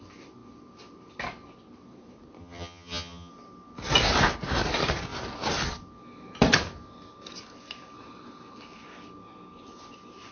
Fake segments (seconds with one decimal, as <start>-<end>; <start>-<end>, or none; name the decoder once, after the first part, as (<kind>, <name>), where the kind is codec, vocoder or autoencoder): 2.4-3.3 (vocoder, HiFi-GAN)